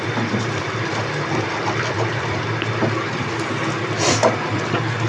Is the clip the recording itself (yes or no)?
no